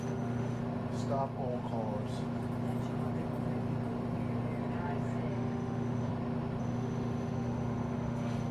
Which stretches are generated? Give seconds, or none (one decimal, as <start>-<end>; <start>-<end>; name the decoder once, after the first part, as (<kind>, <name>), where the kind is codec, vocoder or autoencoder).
0.0-0.6 (autoencoder, DAC-VAE); 5.3-6.1; 6.6-8.5